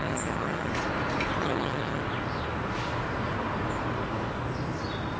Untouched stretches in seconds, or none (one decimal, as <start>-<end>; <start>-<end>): 0.7-1.4; 2.0-5.2